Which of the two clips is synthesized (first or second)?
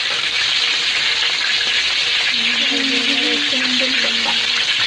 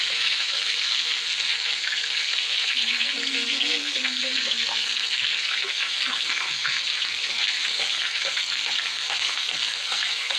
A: second